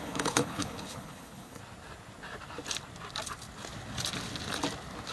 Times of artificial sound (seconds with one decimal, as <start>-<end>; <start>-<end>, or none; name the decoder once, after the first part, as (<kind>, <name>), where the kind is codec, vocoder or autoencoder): 0.0-1.6 (codec, HILCodec)